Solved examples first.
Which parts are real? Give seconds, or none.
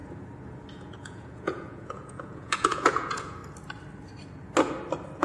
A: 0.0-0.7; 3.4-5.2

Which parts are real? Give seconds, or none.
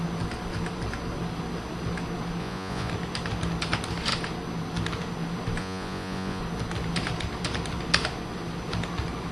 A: 0.0-2.4; 2.9-5.6; 6.4-9.3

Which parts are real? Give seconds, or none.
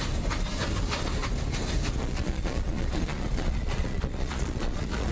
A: 0.0-2.0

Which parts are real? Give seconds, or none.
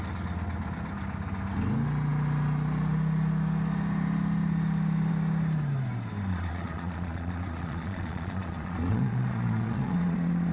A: 0.0-6.3